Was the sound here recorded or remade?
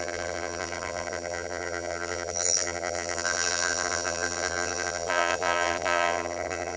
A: remade